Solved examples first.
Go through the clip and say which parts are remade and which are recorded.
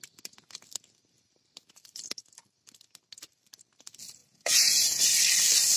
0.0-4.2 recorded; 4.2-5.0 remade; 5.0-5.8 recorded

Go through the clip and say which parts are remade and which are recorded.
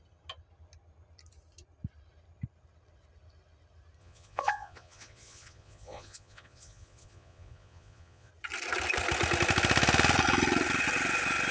0.0-4.0 recorded; 4.0-8.3 remade; 8.3-11.5 recorded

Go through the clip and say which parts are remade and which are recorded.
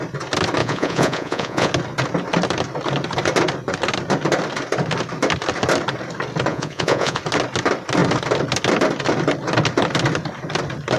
0.0-0.6 recorded; 0.6-1.7 remade; 1.7-6.5 recorded; 6.5-7.2 remade; 7.2-11.0 recorded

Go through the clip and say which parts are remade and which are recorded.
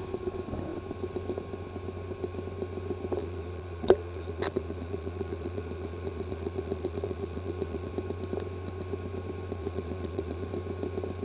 0.0-3.2 recorded; 3.2-7.9 remade; 7.9-9.6 recorded; 9.6-10.5 remade; 10.5-11.2 recorded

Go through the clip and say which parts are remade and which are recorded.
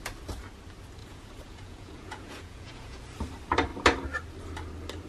0.0-1.0 recorded; 1.0-3.0 remade; 3.0-5.1 recorded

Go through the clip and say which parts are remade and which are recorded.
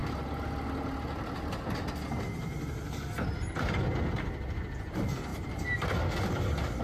0.0-6.8 recorded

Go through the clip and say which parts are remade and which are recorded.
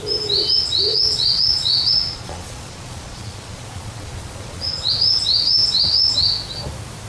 0.0-0.9 recorded; 0.9-4.9 remade; 4.9-7.1 recorded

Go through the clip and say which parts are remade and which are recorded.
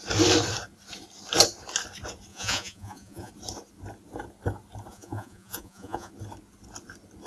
0.0-2.3 recorded; 2.3-3.3 remade; 3.3-4.9 recorded; 4.9-6.1 remade; 6.1-7.3 recorded